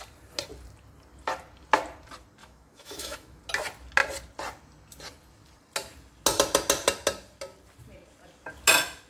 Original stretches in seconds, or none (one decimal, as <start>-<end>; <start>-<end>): 0.0-2.4; 3.4-9.1